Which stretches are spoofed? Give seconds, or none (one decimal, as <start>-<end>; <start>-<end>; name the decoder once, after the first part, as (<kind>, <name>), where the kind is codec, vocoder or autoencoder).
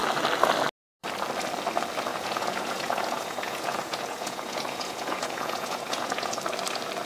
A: 2.1-6.4 (vocoder, Vocos)